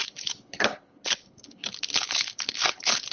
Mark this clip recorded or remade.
remade